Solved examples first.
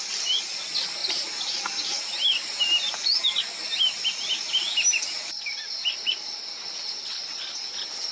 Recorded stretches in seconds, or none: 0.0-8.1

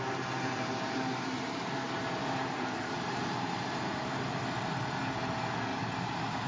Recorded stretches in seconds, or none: 0.0-0.5; 1.7-2.2; 4.7-5.7